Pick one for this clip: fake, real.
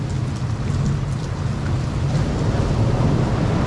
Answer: real